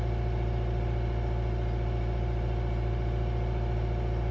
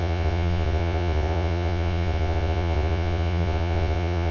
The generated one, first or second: second